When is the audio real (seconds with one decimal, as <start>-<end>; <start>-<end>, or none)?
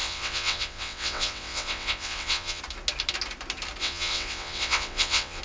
2.6-3.8